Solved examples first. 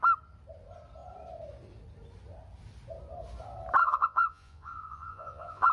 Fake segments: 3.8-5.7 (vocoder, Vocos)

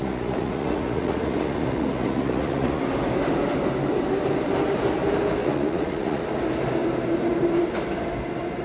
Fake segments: 0.0-2.8 (vocoder, Vocos); 5.4-6.2

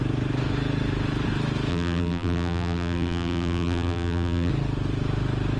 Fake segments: 1.7-4.5 (vocoder, BigVGAN v2)

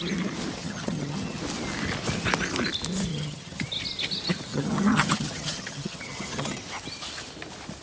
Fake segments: 0.6-1.4 (vocoder, HiFi-GAN); 3.1-3.6; 4.5-6.6

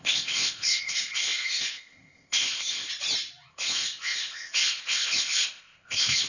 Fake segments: 0.0-2.9 (codec, ZipCodec); 3.5-6.3